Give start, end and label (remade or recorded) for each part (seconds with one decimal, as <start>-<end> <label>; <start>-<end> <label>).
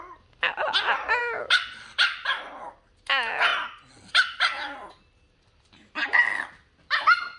0.0-7.4 recorded